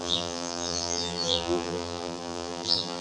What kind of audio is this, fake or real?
fake